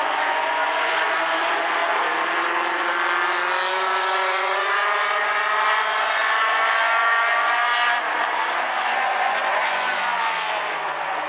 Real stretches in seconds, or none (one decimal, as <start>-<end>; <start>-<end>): 1.8-3.7; 7.7-8.7